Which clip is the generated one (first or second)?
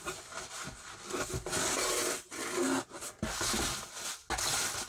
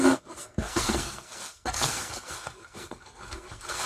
second